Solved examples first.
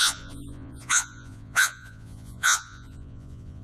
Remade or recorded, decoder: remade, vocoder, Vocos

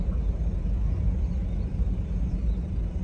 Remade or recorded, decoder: recorded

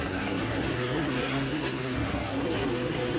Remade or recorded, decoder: remade, codec, SNAC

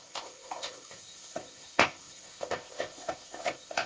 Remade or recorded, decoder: remade, codec, ZipCodec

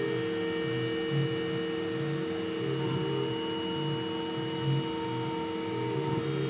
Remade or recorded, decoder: recorded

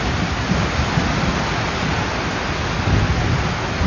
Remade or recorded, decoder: recorded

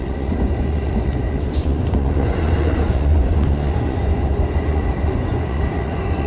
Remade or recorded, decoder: remade, vocoder, Vocos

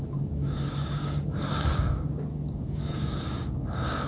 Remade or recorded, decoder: remade, codec, DAC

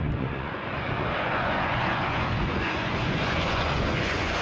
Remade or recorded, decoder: remade, vocoder, Vocos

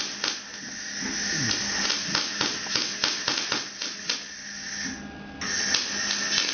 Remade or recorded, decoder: recorded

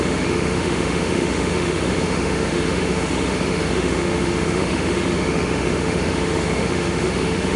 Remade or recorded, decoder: remade, autoencoder, DAC-VAE